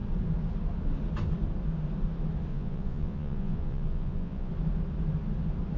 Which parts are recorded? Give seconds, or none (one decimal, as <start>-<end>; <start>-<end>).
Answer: 0.0-2.5; 4.5-5.8